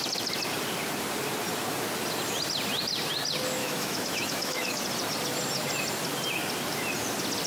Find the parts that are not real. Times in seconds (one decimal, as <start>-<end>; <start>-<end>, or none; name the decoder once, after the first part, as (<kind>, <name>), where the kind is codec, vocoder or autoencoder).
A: 3.6-4.8 (autoencoder, DAC-VAE)